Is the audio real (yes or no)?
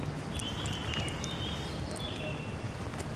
yes